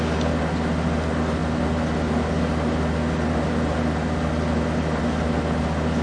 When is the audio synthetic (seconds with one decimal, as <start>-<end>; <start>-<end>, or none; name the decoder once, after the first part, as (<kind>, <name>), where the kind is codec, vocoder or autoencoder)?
none